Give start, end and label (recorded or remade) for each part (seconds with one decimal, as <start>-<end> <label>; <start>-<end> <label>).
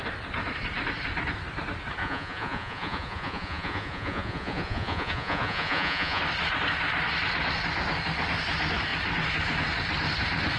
0.0-2.0 recorded; 2.0-6.2 remade; 6.2-10.6 recorded